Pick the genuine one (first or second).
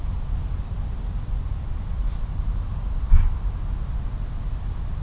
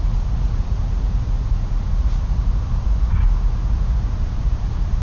first